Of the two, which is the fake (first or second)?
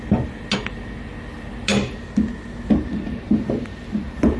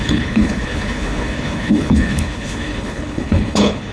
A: second